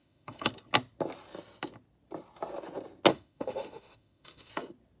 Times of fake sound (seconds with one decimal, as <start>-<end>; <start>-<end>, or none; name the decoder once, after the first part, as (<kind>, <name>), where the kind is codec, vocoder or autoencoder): 0.0-0.5 (autoencoder, DAC-VAE); 3.1-4.5